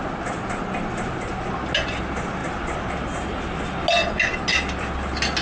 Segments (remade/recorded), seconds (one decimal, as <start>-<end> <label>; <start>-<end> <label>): 0.0-5.4 recorded